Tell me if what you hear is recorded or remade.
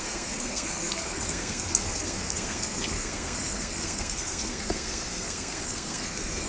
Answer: remade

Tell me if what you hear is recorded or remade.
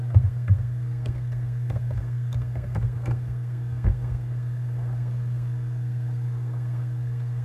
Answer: remade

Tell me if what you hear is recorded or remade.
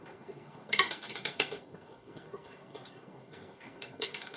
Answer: remade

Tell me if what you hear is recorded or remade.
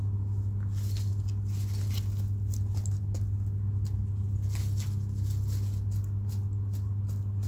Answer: recorded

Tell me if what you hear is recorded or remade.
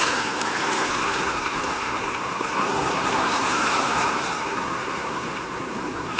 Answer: remade